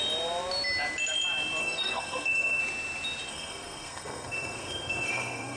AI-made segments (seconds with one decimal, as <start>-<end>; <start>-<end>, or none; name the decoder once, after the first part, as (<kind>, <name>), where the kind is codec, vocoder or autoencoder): 1.6-2.6 (codec, SNAC); 3.3-5.6